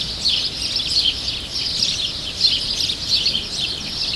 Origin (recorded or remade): recorded